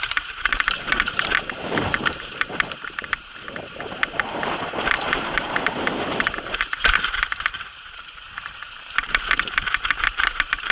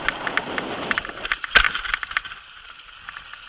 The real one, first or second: second